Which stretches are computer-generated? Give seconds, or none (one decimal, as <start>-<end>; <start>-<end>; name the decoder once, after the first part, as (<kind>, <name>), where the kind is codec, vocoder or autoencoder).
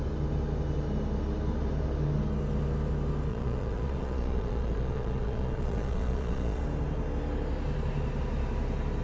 3.3-6.6 (vocoder, Vocos)